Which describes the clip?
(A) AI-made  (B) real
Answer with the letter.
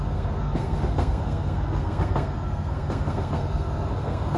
A